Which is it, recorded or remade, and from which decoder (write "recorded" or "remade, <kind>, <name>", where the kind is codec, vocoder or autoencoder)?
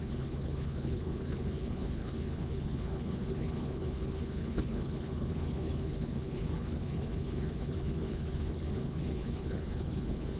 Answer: remade, codec, HILCodec